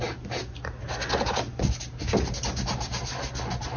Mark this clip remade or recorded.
recorded